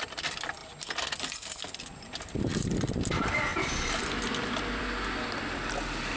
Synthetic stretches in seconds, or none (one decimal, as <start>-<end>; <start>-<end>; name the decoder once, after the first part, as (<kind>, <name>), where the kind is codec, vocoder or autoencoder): 0.0-0.6 (vocoder, BigVGAN v2); 1.8-3.5; 4.0-6.2